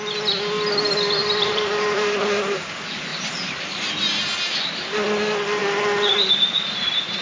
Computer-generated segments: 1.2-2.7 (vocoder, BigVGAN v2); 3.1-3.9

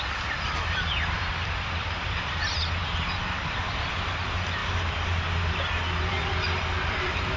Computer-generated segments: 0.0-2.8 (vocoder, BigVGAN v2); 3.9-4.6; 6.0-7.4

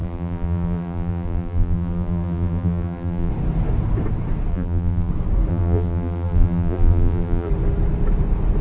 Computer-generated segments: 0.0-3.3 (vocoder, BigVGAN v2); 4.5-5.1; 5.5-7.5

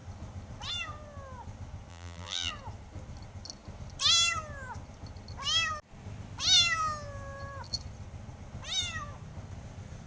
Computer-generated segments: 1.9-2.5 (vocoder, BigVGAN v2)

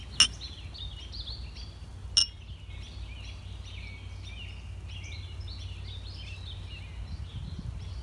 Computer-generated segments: none

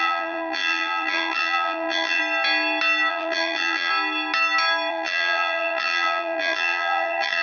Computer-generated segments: 0.0-2.2 (vocoder, BigVGAN v2); 3.1-3.9; 4.9-7.4